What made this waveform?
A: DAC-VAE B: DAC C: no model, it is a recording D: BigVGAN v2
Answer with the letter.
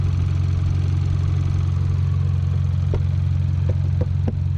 C